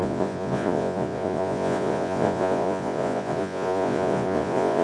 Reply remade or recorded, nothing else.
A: remade